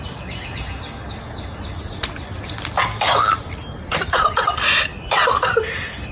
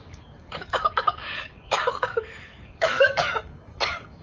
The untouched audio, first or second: first